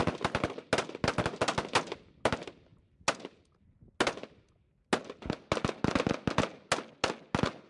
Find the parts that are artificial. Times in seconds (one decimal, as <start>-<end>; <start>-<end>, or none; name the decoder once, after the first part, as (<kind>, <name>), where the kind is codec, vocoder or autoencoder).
none